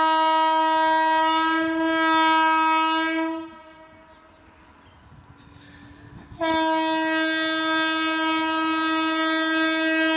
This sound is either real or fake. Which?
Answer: real